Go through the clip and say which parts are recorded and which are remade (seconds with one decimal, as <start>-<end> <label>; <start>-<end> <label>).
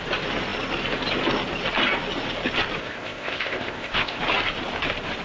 0.0-2.8 recorded; 2.8-4.2 remade; 4.2-5.2 recorded